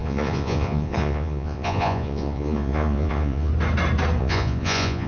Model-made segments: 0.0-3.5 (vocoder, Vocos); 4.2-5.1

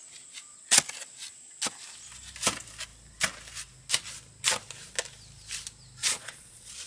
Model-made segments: 6.0-6.9 (vocoder, Vocos)

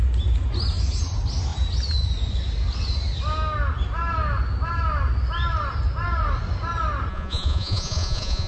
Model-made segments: 7.1-8.5 (vocoder, Vocos)

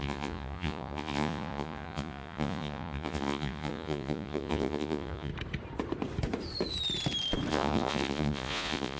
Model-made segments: 0.0-5.3 (vocoder, Vocos); 7.5-9.0

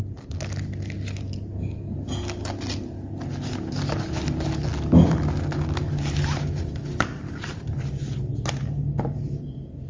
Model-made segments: none